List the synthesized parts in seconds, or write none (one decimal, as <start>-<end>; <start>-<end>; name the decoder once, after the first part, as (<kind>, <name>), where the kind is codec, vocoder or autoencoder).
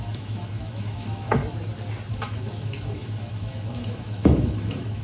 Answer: 0.0-1.4 (autoencoder, DAC-VAE); 2.1-5.0